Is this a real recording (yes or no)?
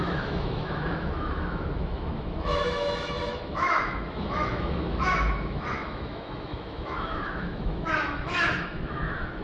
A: no